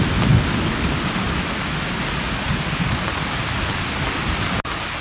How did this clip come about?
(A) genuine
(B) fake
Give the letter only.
A